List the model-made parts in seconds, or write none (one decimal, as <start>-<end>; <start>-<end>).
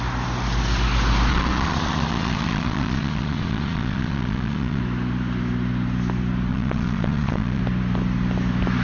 1.3-4.8; 6.5-7.6